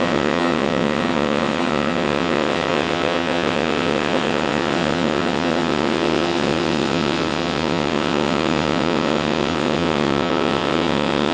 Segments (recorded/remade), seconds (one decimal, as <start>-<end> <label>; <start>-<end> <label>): 0.0-11.3 remade